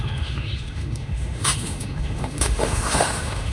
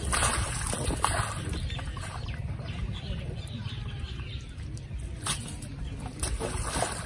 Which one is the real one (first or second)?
second